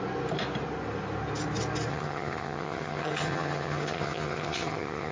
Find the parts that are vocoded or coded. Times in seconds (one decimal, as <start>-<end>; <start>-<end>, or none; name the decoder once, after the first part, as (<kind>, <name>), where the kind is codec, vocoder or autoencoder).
1.9-5.1 (vocoder, HiFi-GAN)